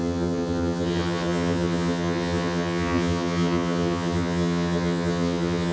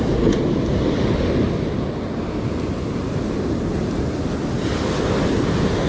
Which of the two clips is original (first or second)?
second